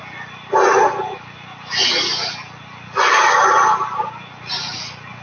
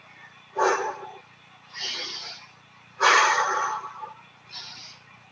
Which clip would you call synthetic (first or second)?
second